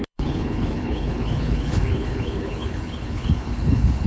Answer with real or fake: fake